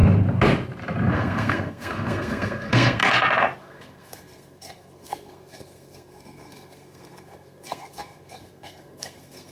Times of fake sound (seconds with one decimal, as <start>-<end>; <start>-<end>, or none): 1.1-3.0; 3.6-9.5